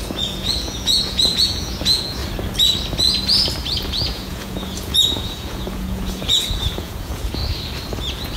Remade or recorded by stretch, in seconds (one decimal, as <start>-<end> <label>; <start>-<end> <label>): 0.0-2.2 remade; 2.2-3.9 recorded; 3.9-7.4 remade; 7.4-8.0 recorded; 8.0-8.4 remade